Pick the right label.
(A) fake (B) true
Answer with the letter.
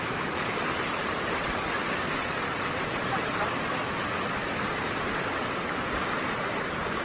B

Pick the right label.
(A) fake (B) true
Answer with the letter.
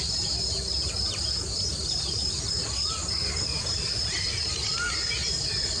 B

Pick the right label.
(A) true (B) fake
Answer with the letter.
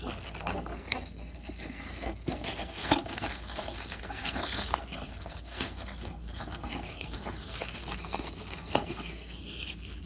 B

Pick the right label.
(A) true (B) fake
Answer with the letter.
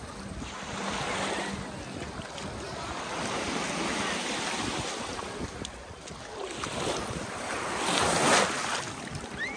A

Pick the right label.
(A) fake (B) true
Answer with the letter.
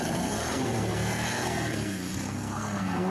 A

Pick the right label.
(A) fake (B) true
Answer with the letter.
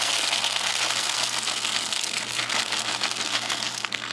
A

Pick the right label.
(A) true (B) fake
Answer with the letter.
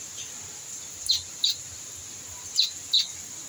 A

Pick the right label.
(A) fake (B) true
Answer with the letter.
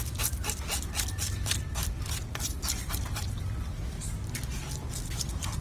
B